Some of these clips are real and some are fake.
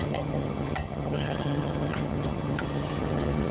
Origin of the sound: fake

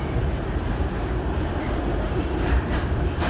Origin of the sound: fake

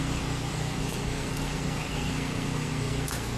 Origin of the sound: fake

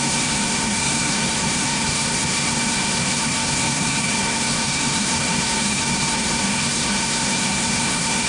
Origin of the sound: fake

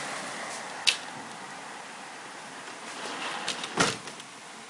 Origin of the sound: real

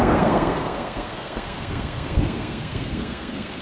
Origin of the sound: fake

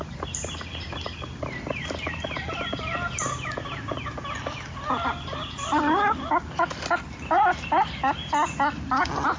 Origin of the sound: real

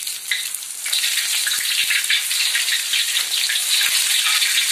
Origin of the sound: real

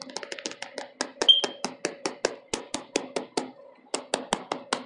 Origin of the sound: real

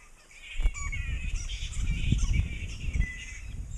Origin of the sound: real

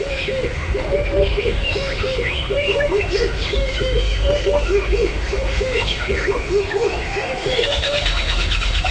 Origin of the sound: fake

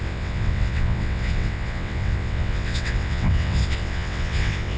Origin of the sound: fake